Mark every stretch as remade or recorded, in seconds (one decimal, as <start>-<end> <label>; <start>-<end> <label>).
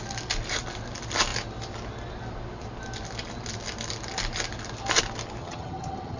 0.0-5.4 recorded; 5.4-6.2 remade